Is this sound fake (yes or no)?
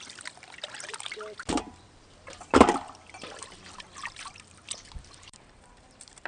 yes